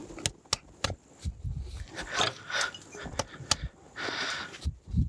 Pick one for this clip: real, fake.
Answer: real